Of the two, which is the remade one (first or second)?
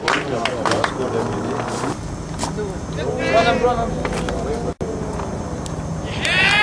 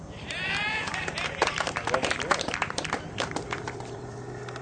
second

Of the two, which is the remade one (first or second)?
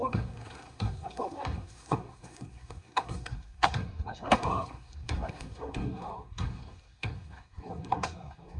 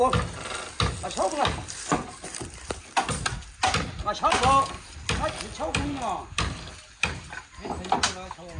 first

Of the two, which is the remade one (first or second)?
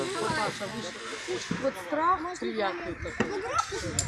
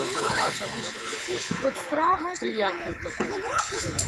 second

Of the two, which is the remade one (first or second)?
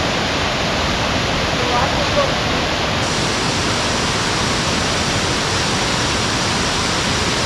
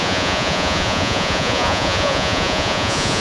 second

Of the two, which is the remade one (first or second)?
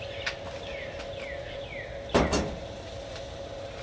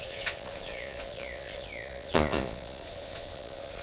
second